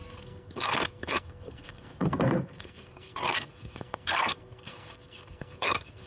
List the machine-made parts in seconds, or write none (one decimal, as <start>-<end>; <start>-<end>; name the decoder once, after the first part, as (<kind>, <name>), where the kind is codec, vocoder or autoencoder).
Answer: 0.0-6.1 (codec, SNAC)